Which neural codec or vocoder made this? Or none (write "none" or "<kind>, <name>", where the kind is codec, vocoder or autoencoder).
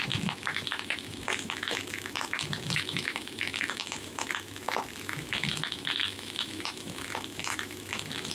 autoencoder, DAC-VAE